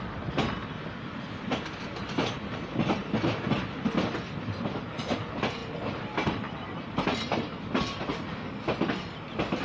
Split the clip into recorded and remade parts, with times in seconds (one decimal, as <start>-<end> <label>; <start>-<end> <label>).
0.0-9.6 recorded